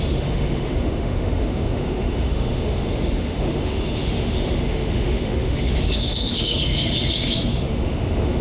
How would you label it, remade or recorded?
remade